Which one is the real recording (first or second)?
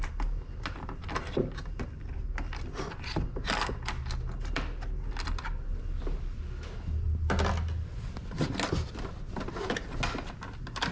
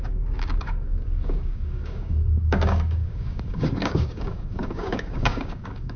first